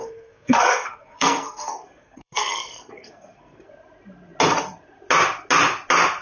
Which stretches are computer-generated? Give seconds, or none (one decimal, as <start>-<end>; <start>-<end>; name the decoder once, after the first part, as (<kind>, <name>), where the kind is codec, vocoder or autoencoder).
0.0-3.7 (codec, SNAC)